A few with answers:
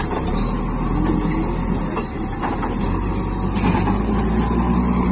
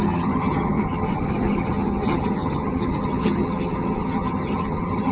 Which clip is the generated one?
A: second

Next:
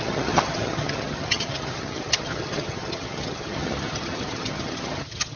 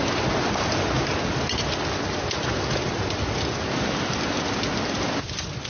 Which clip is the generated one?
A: first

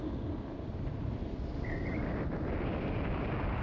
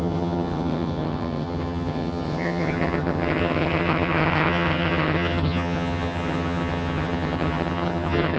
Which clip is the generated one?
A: second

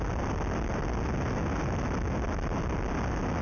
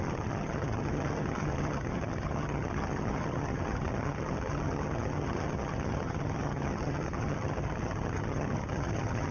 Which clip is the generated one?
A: second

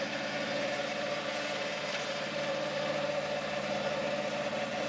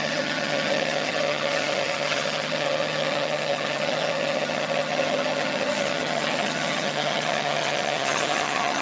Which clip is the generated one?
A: second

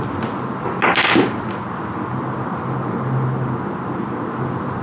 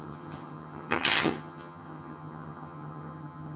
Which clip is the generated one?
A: second